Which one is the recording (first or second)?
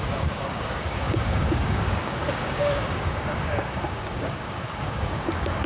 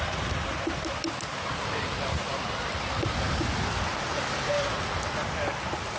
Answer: second